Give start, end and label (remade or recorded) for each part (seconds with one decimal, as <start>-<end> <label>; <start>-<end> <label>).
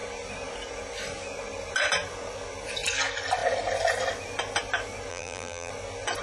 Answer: 0.0-5.1 recorded; 5.1-5.7 remade; 5.7-6.2 recorded